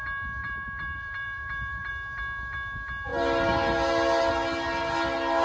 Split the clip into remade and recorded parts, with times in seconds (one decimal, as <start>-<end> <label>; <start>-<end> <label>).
0.0-0.4 recorded; 0.4-1.9 remade; 1.9-5.4 recorded